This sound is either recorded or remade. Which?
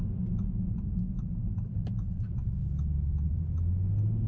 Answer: recorded